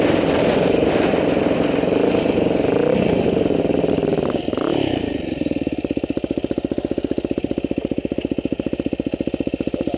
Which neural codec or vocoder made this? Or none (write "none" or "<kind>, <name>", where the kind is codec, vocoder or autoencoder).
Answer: none